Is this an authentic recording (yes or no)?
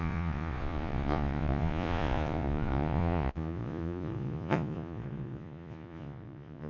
no